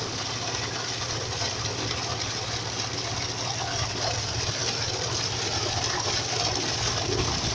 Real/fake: real